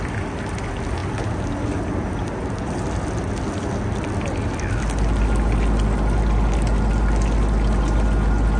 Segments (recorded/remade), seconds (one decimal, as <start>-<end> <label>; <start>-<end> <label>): 0.0-8.6 recorded